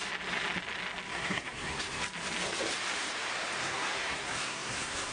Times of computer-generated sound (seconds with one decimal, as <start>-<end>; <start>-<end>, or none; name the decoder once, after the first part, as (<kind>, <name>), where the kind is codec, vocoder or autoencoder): 1.1-2.0 (codec, SNAC); 3.6-5.1

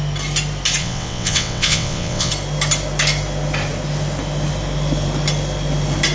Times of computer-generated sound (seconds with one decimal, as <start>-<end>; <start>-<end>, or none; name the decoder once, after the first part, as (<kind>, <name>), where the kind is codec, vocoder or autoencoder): 0.8-2.3 (vocoder, WaveNeXt)

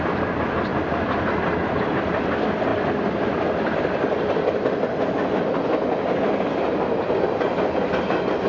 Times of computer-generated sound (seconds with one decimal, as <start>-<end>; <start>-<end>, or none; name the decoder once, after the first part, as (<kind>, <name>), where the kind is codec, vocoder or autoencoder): none

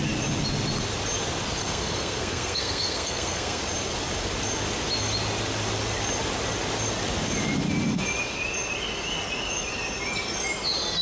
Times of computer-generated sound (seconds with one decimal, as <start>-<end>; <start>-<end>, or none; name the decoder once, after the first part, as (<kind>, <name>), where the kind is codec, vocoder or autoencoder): 1.6-3.6 (codec, SNAC)

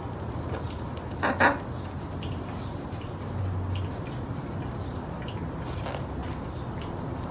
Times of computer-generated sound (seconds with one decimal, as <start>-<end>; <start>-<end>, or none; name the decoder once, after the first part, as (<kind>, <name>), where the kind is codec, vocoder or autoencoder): none

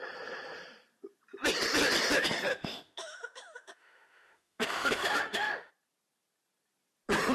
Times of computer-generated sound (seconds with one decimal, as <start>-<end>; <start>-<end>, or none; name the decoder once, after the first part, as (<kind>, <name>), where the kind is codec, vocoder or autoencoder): 2.5-5.7 (autoencoder, DAC-VAE)

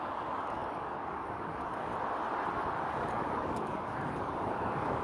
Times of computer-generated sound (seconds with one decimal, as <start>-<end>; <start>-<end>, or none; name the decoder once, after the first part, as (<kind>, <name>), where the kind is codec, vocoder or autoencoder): 0.0-1.9 (codec, DAC); 2.9-5.0

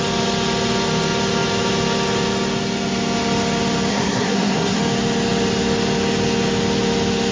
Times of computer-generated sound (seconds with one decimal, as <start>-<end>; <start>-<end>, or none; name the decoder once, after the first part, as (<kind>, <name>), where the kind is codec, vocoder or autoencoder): 3.9-4.8 (codec, SNAC)